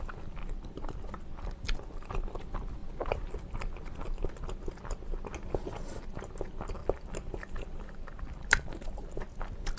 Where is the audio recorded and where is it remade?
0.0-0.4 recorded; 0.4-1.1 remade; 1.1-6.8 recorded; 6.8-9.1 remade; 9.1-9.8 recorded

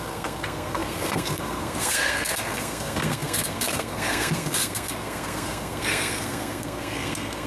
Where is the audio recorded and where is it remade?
0.0-7.5 remade

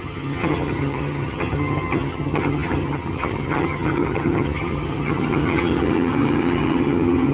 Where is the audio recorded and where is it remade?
0.0-7.3 remade

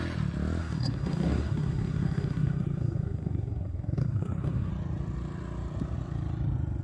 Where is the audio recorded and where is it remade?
0.0-0.6 recorded; 0.6-4.7 remade; 4.7-6.8 recorded

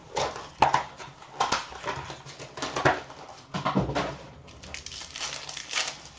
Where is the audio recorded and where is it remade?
0.0-6.2 recorded

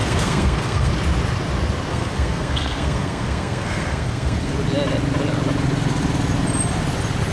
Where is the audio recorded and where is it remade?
0.0-0.9 remade; 0.9-1.9 recorded; 1.9-4.5 remade; 4.5-7.3 recorded

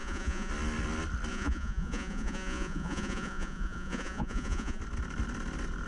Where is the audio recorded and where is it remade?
0.0-0.5 remade; 0.5-1.3 recorded; 1.3-4.8 remade; 4.8-5.9 recorded